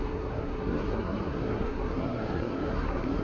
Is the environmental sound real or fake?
fake